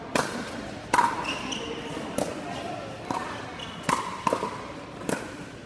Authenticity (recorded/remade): recorded